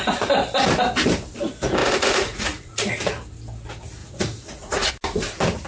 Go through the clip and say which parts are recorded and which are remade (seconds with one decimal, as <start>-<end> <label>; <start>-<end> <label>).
0.0-1.8 recorded; 1.8-2.9 remade; 2.9-4.0 recorded; 4.0-4.9 remade; 4.9-5.7 recorded